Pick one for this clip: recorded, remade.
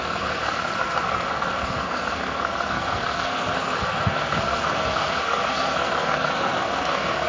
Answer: remade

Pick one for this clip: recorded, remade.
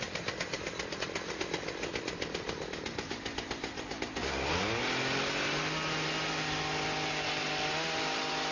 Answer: recorded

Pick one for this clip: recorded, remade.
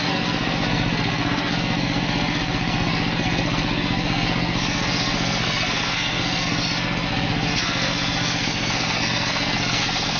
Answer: remade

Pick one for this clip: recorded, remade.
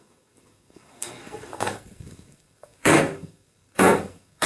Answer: remade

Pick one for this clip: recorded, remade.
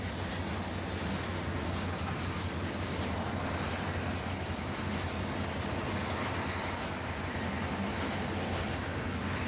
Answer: recorded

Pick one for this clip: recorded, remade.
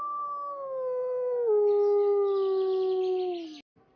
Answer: recorded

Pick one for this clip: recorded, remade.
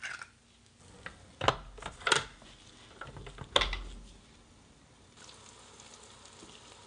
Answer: recorded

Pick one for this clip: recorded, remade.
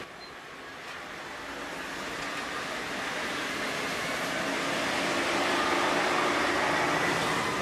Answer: recorded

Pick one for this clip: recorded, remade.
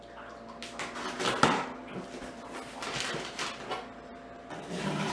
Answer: recorded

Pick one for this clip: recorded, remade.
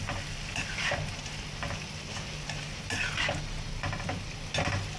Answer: recorded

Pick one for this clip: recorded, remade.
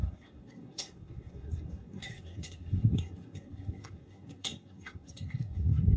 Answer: remade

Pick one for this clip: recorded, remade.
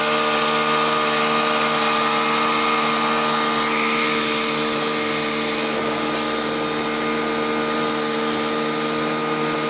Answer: recorded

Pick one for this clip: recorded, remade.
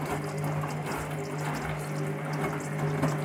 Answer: recorded